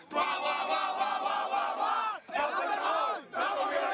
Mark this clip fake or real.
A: real